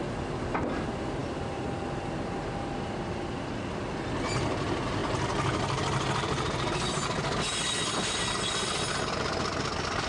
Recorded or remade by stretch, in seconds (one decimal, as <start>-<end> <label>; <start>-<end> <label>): 0.0-10.1 recorded